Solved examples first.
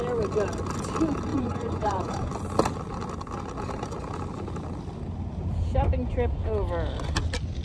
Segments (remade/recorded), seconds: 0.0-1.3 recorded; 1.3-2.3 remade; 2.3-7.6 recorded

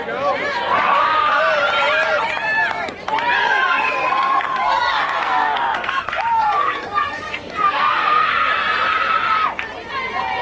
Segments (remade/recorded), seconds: 0.0-0.5 recorded; 0.5-1.4 remade; 1.4-3.4 recorded; 3.4-8.5 remade; 8.5-10.4 recorded

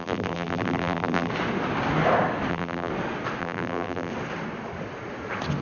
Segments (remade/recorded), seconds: 0.0-1.3 remade; 1.3-2.5 recorded; 2.5-2.9 remade; 2.9-3.4 recorded; 3.4-4.1 remade; 4.1-5.6 recorded